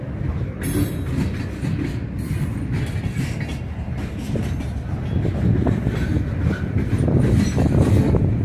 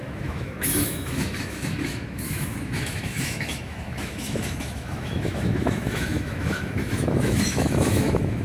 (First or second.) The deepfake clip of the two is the second